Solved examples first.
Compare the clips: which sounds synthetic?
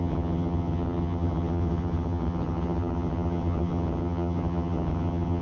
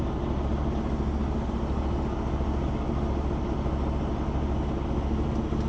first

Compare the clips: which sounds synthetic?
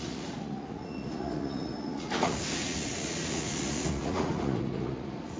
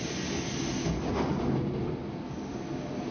first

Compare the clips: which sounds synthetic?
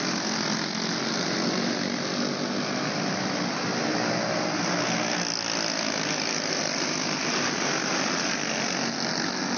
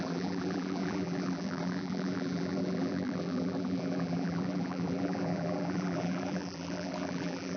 second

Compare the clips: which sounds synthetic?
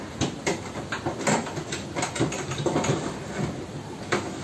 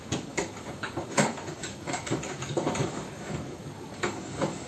second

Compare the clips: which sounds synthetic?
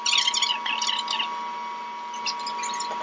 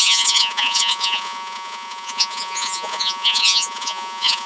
second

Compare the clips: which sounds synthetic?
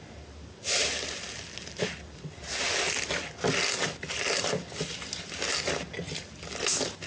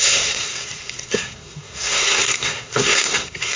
second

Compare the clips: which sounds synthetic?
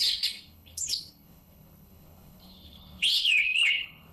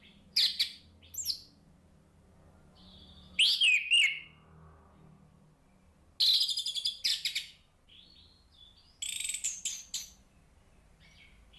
first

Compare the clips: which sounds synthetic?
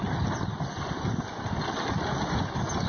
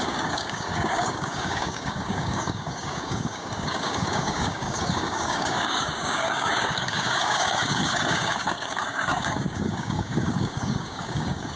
second